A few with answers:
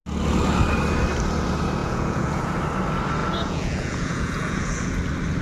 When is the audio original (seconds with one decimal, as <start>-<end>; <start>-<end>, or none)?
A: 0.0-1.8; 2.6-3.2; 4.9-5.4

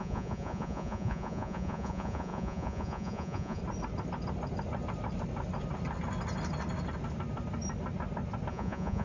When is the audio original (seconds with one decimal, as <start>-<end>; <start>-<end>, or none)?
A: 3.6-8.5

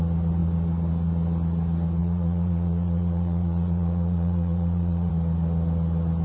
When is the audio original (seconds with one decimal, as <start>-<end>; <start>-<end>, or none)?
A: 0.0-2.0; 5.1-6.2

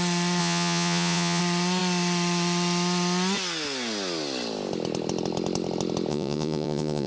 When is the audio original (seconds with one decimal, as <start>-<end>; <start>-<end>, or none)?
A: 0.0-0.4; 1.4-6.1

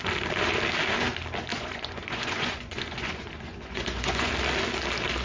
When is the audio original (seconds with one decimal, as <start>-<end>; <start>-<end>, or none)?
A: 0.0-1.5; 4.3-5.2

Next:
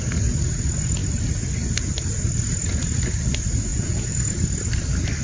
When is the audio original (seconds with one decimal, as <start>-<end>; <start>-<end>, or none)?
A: 0.0-3.7; 4.2-5.2

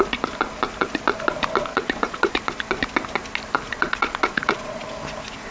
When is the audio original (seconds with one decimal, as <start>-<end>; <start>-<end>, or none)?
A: 0.0-1.7; 2.3-3.7; 4.8-5.5